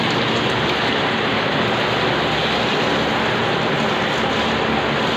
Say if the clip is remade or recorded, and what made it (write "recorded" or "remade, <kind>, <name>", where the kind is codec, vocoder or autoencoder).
recorded